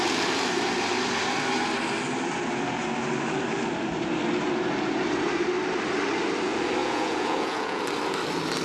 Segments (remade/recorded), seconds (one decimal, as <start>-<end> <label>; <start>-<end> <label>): 0.0-6.8 recorded; 6.8-7.8 remade; 7.8-8.6 recorded